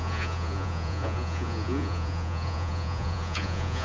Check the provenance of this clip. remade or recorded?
remade